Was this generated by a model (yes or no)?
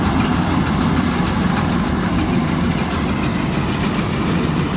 no